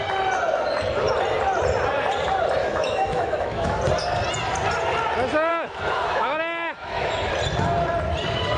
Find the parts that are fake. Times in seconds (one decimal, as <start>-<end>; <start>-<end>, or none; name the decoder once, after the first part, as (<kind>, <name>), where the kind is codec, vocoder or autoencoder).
2.6-3.8 (autoencoder, DAC-VAE); 5.5-7.3